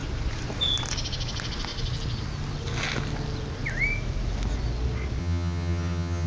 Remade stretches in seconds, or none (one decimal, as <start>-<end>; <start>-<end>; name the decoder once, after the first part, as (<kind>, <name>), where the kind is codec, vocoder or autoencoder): 5.2-6.3 (vocoder, HiFi-GAN)